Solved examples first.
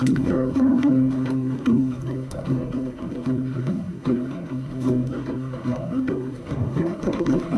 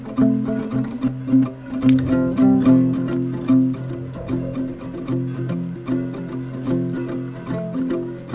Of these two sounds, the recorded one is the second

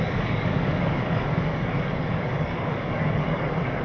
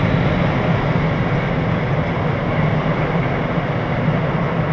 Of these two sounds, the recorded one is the second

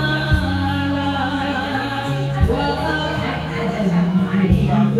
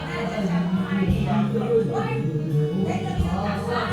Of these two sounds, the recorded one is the second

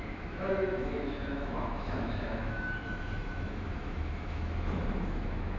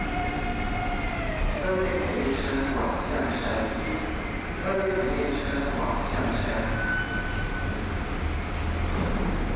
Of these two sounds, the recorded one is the second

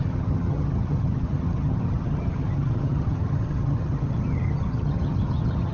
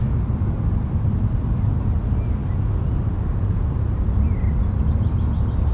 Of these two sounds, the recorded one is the second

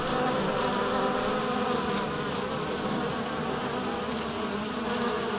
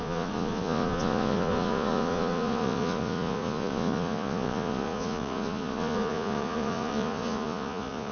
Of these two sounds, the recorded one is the first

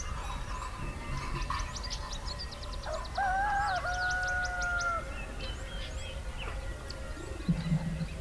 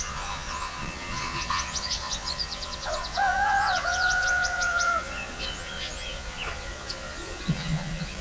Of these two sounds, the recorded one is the first